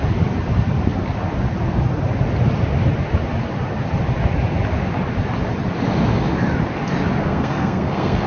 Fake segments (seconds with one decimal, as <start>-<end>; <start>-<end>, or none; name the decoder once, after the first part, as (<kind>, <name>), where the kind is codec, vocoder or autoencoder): 7.2-8.3 (codec, SNAC)

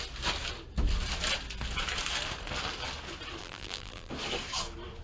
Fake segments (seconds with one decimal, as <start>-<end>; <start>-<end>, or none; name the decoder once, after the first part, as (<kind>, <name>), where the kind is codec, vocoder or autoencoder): 3.4-4.1 (vocoder, BigVGAN v2)

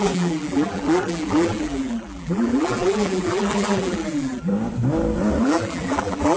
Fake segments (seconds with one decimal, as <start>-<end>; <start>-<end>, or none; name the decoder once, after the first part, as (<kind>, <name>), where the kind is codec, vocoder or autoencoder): 0.0-4.5 (vocoder, BigVGAN v2); 5.4-6.4